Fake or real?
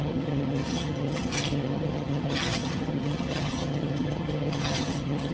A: fake